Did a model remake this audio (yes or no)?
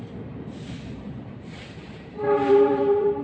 yes